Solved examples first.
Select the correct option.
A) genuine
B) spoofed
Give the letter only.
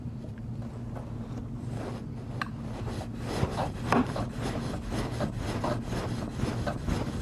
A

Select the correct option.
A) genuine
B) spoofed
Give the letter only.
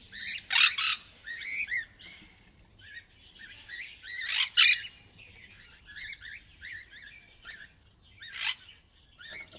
A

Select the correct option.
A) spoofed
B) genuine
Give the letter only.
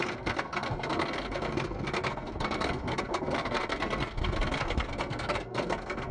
A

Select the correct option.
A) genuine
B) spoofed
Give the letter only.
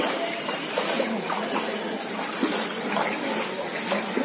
A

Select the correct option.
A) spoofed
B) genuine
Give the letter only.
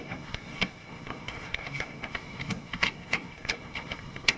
A